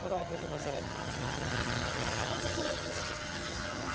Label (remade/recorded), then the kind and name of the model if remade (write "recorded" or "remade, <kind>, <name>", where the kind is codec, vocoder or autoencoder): remade, vocoder, HiFi-GAN